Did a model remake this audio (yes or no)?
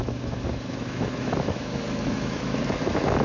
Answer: yes